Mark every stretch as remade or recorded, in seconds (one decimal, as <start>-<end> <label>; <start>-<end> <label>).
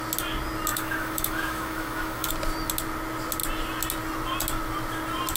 0.0-0.7 recorded; 0.7-2.3 remade; 2.3-5.4 recorded